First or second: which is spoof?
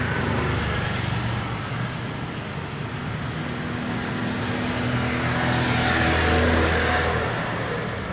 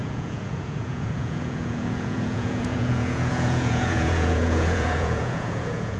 second